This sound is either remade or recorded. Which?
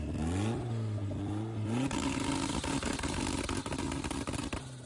recorded